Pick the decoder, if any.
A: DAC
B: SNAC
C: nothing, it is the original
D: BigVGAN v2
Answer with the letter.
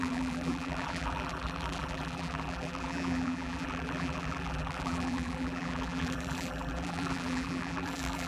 D